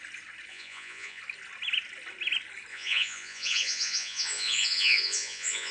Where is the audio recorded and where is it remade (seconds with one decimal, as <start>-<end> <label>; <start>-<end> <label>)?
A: 0.0-0.5 recorded; 0.5-1.2 remade; 1.2-2.7 recorded; 2.7-5.7 remade